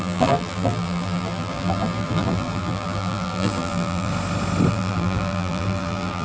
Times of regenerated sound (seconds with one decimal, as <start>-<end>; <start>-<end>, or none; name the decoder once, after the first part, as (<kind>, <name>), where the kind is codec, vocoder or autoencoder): 0.0-4.1 (vocoder, BigVGAN v2); 4.7-6.2